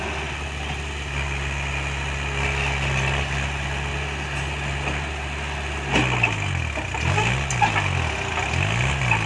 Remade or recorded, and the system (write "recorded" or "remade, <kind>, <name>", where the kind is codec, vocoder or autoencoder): recorded